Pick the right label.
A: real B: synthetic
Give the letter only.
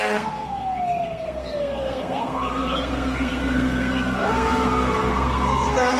B